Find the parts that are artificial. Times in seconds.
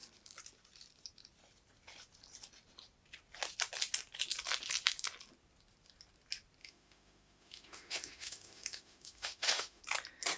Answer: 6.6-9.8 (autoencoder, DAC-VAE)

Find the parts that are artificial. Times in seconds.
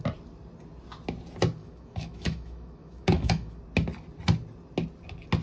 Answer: 1.6-3.6 (autoencoder, DAC-VAE)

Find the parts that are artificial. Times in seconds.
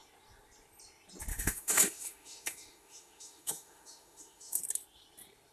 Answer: 1.3-4.6 (autoencoder, DAC-VAE)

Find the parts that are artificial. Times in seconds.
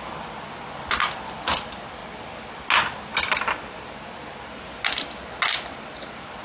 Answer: none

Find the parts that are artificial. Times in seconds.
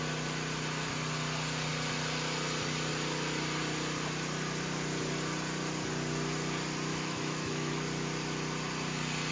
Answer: 6.9-7.7 (autoencoder, DAC-VAE)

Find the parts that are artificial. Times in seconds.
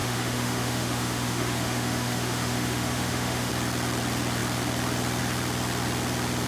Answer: 0.0-3.5 (autoencoder, DAC-VAE)